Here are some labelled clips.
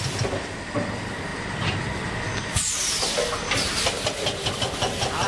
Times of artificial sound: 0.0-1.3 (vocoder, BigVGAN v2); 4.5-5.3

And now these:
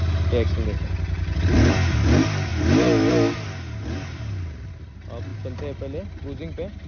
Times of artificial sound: none

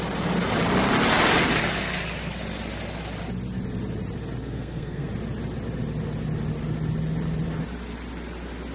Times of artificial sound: 4.4-5.1 (codec, SNAC)

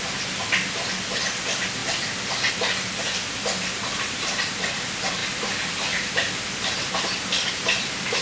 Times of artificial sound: 5.2-6.9 (vocoder, BigVGAN v2)

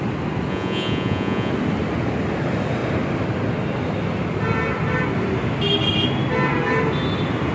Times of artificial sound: 0.5-1.5 (vocoder, Vocos)

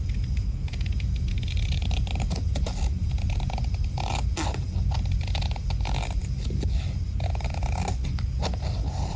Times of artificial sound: none

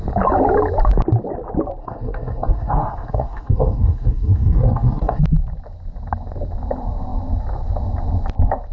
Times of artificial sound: 1.8-5.2 (codec, SNAC)

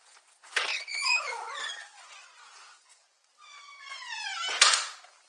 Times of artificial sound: 0.0-4.3 (vocoder, Vocos)